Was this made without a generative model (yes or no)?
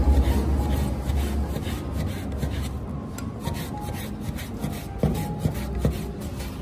yes